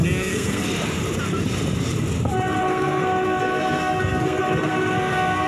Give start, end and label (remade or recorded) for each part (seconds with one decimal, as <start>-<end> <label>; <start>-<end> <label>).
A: 0.0-0.6 remade; 0.6-2.6 recorded; 2.6-5.5 remade